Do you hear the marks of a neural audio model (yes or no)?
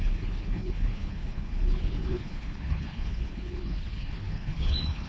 yes